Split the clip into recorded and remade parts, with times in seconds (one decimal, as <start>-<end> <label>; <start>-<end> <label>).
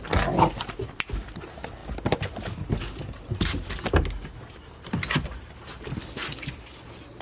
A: 0.0-7.2 recorded